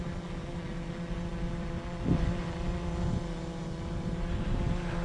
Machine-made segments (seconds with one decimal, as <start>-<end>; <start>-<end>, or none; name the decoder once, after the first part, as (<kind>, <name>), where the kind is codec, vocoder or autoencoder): none